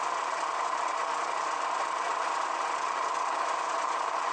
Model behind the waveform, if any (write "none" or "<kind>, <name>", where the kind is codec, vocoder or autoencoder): none